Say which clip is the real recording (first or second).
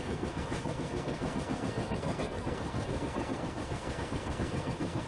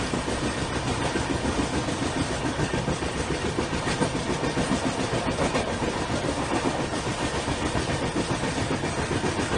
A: second